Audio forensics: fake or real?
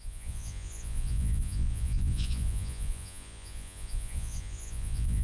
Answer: fake